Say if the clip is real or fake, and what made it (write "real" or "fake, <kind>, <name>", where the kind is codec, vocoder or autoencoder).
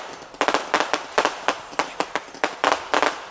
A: real